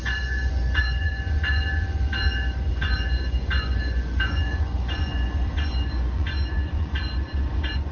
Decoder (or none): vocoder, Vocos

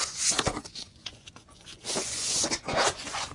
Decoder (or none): vocoder, Vocos